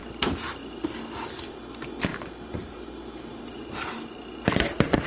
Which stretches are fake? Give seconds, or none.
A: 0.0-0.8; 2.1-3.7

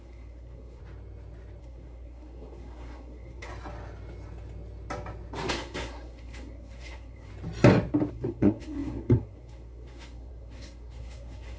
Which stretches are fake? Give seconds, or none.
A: 0.0-0.8; 1.6-3.5; 5.5-7.3; 8.1-11.6